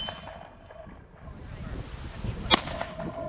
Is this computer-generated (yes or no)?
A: no